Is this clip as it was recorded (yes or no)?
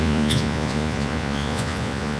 no